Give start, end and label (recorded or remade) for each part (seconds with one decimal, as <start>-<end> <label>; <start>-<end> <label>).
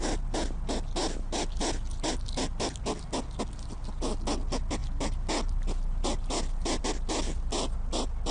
0.0-8.3 recorded